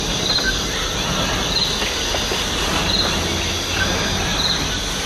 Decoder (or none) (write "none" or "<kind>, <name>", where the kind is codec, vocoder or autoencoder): none